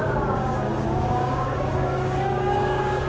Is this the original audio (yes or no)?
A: no